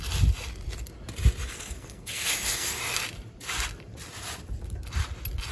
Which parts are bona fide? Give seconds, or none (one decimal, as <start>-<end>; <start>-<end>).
0.0-1.4; 2.8-5.5